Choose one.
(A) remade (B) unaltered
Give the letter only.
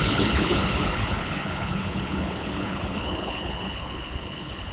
A